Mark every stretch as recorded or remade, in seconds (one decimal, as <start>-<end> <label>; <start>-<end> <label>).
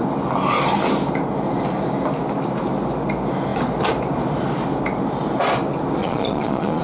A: 0.0-6.0 recorded; 6.0-6.8 remade